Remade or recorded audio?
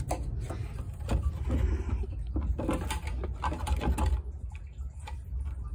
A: recorded